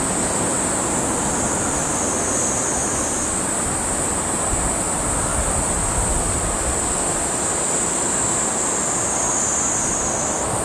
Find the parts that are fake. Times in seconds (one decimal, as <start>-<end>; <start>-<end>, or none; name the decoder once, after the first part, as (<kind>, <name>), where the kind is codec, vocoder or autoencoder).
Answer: 2.8-4.0 (vocoder, BigVGAN v2); 5.3-8.0

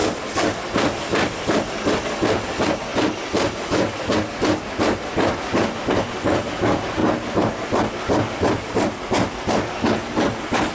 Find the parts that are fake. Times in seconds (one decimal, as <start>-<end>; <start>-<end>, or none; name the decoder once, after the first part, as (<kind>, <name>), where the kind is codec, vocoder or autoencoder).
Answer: none

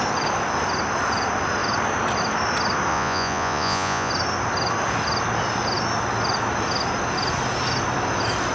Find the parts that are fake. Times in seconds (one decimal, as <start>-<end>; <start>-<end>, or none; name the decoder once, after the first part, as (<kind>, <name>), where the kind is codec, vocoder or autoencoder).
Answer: 2.9-4.1 (vocoder, Vocos)